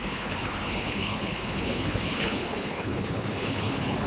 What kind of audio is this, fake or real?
fake